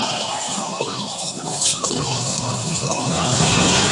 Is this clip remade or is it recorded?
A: remade